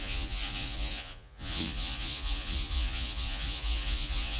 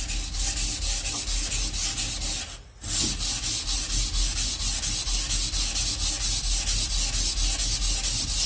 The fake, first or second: first